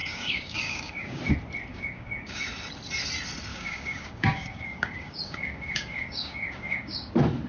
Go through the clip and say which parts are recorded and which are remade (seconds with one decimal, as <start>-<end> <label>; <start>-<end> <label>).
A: 0.0-1.2 remade; 1.2-1.7 recorded; 1.7-2.4 remade; 2.4-3.5 recorded; 3.5-7.1 remade; 7.1-7.5 recorded